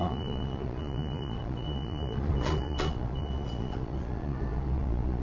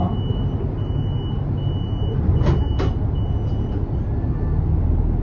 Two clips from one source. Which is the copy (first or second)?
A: first